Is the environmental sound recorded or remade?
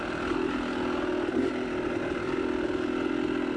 recorded